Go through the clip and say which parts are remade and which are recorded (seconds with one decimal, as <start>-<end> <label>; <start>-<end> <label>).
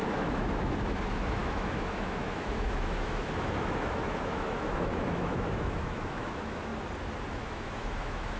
0.0-6.7 remade; 6.7-7.3 recorded; 7.3-8.4 remade